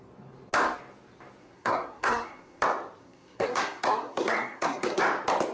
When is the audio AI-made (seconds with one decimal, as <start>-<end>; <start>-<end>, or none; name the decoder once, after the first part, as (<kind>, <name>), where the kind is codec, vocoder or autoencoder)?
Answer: 1.4-2.6 (codec, SNAC); 3.0-5.0